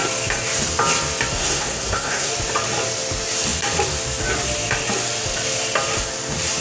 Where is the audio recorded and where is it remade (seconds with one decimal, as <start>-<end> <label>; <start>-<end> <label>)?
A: 0.0-1.4 recorded; 1.4-2.3 remade; 2.3-6.6 recorded